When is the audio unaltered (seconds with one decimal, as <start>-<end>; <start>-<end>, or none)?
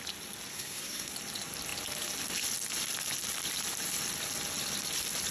0.0-0.5; 1.1-5.3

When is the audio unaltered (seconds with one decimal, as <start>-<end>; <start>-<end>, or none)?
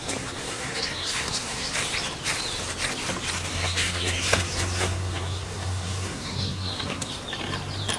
1.7-3.5; 7.1-8.0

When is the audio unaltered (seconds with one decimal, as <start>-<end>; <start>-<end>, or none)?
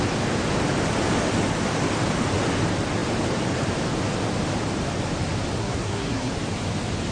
0.0-5.6; 6.3-7.1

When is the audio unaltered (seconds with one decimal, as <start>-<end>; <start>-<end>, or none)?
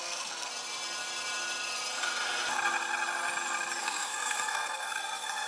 0.5-3.8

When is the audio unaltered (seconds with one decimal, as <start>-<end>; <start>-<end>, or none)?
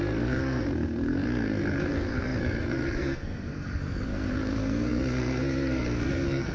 none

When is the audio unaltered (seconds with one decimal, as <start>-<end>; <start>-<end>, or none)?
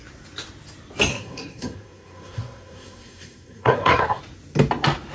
0.0-1.1; 4.2-5.1